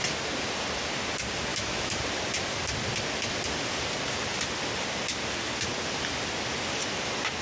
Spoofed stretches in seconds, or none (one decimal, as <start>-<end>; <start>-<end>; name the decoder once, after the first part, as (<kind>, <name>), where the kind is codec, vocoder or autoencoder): 1.5-2.0 (autoencoder, DAC-VAE)